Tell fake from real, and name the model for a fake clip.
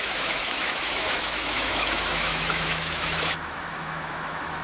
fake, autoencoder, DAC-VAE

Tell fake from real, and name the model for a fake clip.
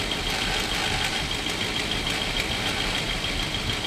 real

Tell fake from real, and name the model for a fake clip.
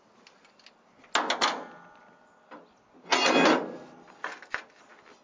real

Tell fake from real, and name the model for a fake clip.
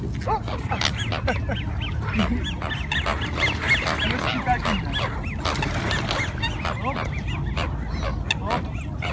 real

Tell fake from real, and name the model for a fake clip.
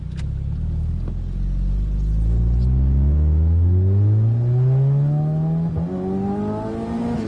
real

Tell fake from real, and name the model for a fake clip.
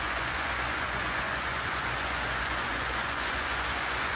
fake, vocoder, Vocos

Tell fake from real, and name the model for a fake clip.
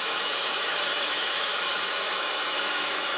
fake, autoencoder, DAC-VAE